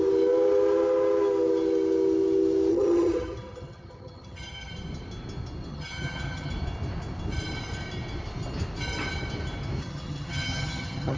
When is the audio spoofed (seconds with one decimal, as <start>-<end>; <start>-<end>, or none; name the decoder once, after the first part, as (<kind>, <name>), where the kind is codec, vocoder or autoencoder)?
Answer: 2.7-4.7 (vocoder, HiFi-GAN); 5.7-6.5; 9.8-11.2